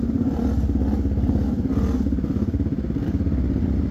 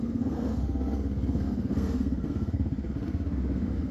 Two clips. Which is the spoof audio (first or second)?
second